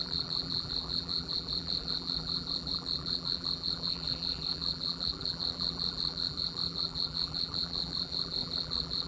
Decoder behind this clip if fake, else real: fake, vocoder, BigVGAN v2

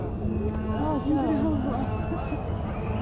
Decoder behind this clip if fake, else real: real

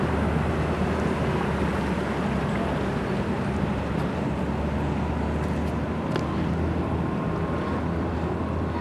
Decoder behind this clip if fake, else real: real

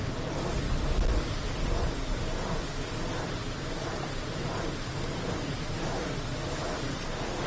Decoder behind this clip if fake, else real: real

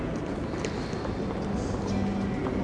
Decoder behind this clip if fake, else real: real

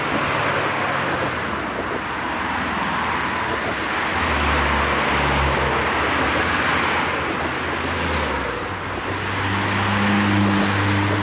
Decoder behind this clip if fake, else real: real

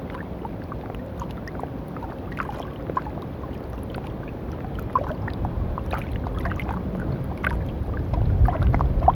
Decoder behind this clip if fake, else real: fake, vocoder, BigVGAN v2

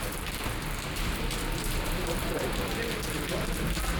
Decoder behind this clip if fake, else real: fake, vocoder, BigVGAN v2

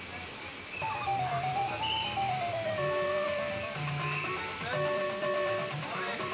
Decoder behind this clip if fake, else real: fake, vocoder, BigVGAN v2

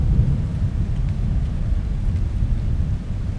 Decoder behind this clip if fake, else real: real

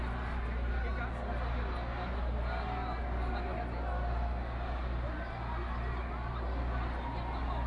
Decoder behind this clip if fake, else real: real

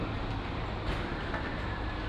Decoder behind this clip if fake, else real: real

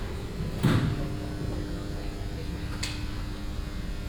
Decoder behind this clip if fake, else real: real